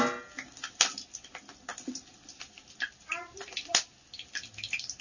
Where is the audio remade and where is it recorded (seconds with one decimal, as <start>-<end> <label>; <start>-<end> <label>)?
0.0-5.0 recorded